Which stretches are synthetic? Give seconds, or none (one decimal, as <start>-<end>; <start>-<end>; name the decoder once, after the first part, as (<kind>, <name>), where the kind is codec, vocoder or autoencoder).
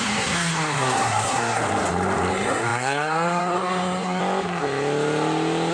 0.0-1.6 (codec, SNAC); 2.3-4.2